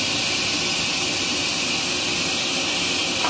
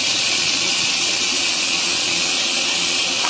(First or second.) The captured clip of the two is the first